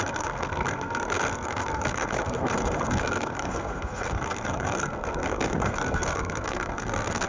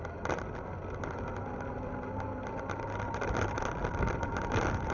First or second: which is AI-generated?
first